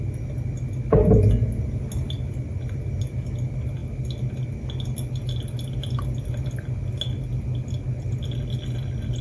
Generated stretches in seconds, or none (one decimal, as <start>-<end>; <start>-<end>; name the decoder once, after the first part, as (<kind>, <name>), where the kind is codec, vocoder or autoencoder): none